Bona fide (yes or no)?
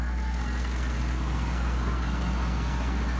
no